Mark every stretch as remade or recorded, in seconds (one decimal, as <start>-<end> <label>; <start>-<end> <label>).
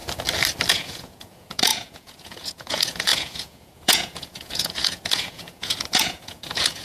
0.0-0.7 recorded; 0.7-6.8 remade